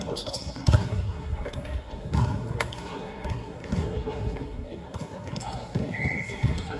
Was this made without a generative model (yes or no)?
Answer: no